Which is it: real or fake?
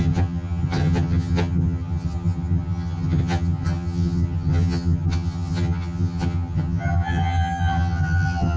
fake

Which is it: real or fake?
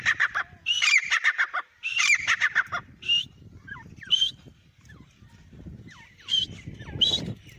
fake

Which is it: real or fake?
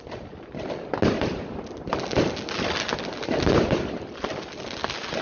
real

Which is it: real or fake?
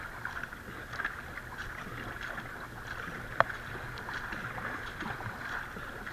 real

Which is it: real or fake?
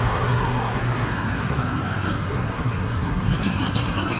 fake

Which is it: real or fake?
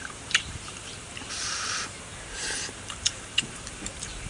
fake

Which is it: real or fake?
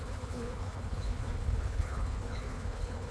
fake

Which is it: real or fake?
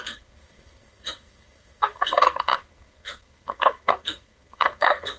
fake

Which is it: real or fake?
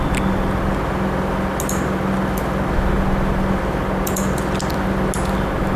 real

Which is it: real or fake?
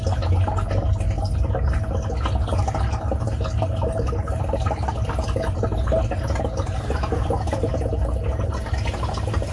real